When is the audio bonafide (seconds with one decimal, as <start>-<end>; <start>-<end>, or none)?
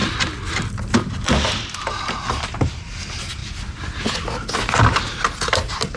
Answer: 0.0-6.0